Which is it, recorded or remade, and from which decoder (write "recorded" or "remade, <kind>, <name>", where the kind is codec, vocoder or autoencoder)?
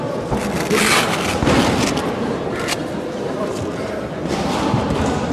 recorded